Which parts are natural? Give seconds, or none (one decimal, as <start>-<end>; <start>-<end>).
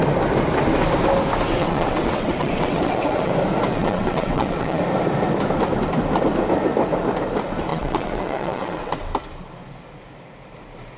0.0-1.5; 3.3-3.7; 4.8-7.7; 8.9-11.0